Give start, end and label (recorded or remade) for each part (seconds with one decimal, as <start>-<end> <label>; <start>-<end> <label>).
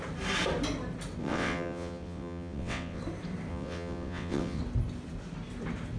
0.0-1.2 recorded; 1.2-3.0 remade; 3.0-3.5 recorded; 3.5-4.6 remade; 4.6-6.0 recorded